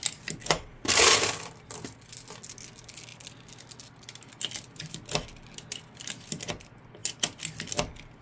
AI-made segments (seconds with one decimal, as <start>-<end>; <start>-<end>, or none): none